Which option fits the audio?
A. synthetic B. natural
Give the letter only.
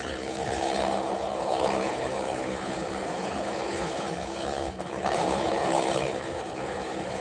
A